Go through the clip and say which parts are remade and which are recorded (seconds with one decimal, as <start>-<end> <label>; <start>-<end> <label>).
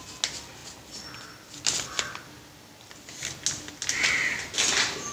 0.0-5.1 recorded